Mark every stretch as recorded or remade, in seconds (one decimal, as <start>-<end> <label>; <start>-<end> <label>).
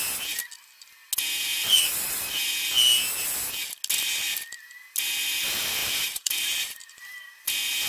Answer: 0.0-1.5 recorded; 1.5-2.5 remade; 2.5-5.8 recorded; 5.8-7.3 remade; 7.3-7.9 recorded